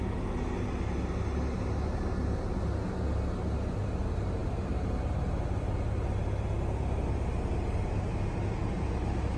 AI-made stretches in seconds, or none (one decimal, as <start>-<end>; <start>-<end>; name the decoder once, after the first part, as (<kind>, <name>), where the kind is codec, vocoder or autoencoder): 4.4-5.2 (vocoder, BigVGAN v2); 8.6-9.4